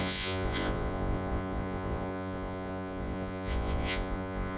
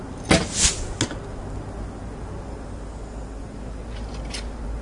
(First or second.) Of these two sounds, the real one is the second